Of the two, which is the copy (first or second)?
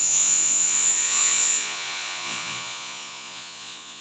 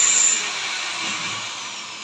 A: first